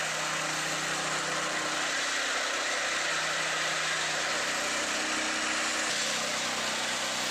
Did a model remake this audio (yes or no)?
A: no